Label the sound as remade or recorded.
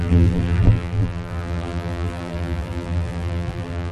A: remade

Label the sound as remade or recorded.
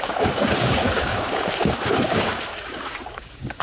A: remade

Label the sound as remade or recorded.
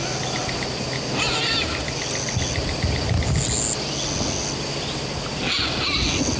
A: recorded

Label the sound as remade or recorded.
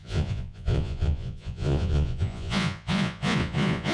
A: remade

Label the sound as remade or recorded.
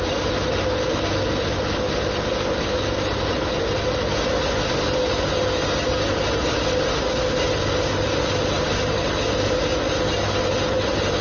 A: recorded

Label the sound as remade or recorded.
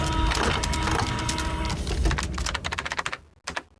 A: recorded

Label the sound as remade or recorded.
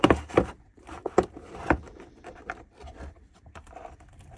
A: remade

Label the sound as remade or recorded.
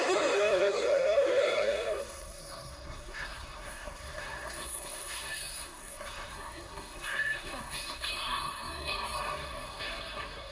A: remade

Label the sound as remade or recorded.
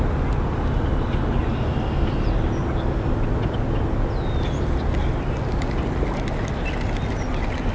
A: recorded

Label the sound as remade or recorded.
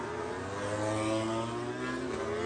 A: recorded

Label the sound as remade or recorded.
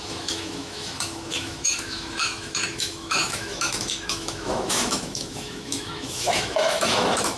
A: remade